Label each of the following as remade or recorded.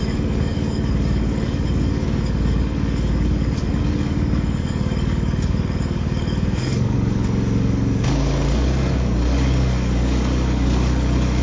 remade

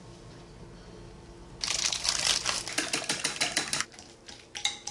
recorded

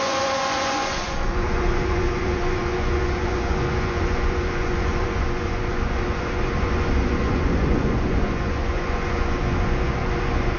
remade